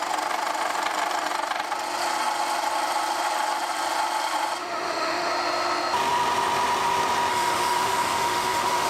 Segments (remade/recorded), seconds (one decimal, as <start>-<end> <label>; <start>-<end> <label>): 0.0-4.6 recorded; 4.6-5.3 remade; 5.3-7.3 recorded; 7.3-8.9 remade